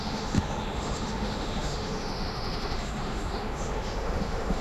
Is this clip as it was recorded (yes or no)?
no